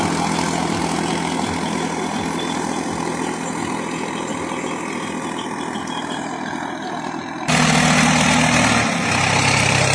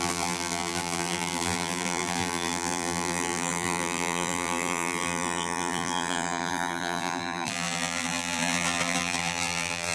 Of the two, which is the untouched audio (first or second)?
first